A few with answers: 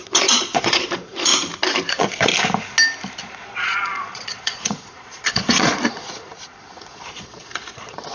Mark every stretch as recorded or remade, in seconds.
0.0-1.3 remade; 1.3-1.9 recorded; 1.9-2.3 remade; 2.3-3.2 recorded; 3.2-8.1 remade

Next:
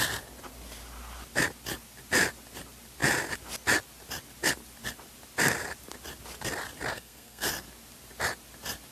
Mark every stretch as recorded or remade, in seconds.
0.0-6.9 recorded; 6.9-7.5 remade; 7.5-8.9 recorded

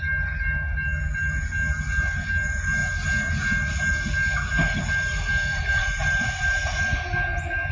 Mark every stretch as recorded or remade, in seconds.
0.0-5.5 recorded; 5.5-6.6 remade; 6.6-7.7 recorded

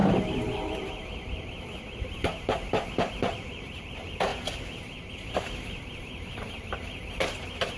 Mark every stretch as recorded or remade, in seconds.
0.0-4.3 remade; 4.3-5.1 recorded; 5.1-7.8 remade

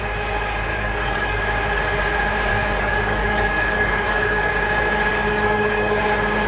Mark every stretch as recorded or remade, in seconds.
0.0-0.7 recorded; 0.7-1.4 remade; 1.4-2.5 recorded; 2.5-4.5 remade; 4.5-5.1 recorded; 5.1-6.0 remade; 6.0-6.5 recorded

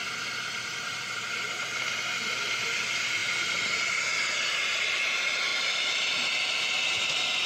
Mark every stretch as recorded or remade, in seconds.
0.0-3.2 recorded; 3.2-3.7 remade; 3.7-7.5 recorded

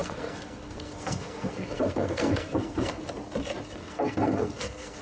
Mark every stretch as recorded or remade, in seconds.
0.0-3.0 remade; 3.0-3.8 recorded; 3.8-5.0 remade

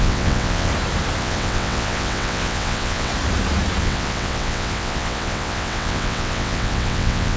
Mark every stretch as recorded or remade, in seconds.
0.0-0.7 remade; 0.7-1.2 recorded; 1.2-3.1 remade; 3.1-3.8 recorded; 3.8-7.4 remade